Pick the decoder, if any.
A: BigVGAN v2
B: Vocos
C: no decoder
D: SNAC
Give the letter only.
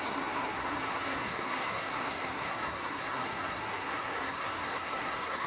D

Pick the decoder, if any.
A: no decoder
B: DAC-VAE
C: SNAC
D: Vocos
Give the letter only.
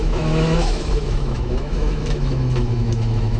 B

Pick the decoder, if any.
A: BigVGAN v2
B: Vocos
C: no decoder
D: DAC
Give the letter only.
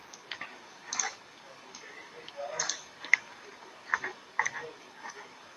D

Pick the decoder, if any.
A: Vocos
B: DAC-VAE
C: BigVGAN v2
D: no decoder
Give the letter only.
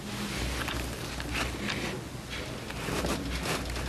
D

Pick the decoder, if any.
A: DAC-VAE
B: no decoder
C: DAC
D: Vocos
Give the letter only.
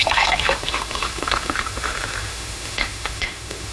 A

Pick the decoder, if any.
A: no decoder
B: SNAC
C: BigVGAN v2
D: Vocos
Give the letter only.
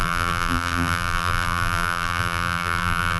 C